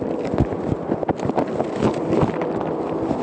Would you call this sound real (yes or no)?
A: yes